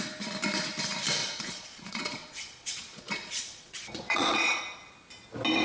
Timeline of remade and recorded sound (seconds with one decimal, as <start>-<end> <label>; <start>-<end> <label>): 0.0-1.2 recorded; 1.2-4.6 remade; 4.6-5.6 recorded